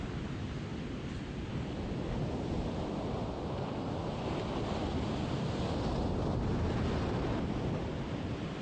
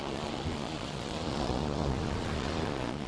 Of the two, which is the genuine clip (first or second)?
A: first